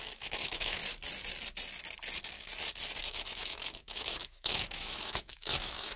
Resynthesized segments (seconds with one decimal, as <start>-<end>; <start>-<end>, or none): 0.0-0.8; 3.0-6.0